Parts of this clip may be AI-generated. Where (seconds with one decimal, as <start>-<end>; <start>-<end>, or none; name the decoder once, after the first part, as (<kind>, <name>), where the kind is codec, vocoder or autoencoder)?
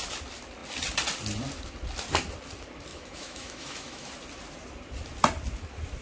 2.9-4.1 (autoencoder, DAC-VAE)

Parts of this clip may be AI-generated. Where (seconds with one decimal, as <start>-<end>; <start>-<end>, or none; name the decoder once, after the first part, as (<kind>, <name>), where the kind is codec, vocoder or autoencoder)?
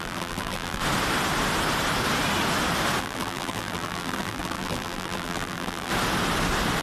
0.0-0.8 (vocoder, BigVGAN v2); 3.0-5.9